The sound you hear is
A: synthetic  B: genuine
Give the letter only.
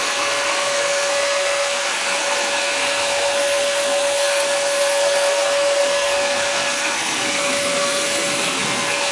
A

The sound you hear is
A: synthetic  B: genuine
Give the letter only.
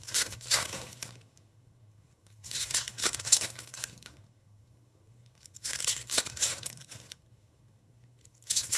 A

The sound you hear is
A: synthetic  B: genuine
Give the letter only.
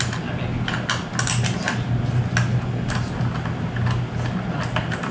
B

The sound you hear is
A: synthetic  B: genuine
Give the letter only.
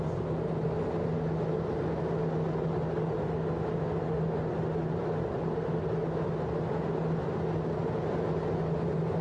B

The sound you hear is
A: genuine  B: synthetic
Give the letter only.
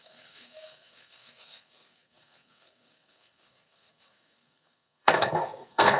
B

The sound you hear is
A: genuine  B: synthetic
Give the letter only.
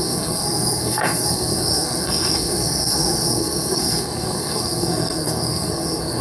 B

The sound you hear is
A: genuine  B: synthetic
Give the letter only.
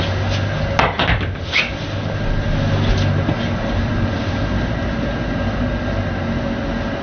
A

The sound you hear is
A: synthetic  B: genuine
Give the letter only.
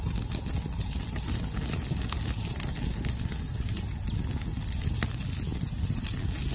B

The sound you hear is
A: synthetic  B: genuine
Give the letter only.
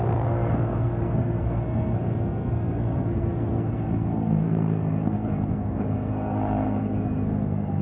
A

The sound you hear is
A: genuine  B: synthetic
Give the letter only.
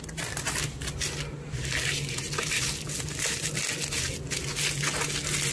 A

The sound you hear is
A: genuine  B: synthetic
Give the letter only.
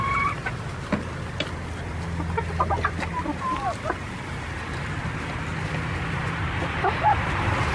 A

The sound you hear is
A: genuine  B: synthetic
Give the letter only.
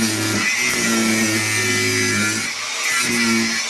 A